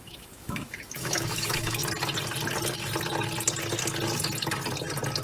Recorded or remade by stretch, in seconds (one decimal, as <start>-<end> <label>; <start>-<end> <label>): 0.0-1.8 remade; 1.8-5.2 recorded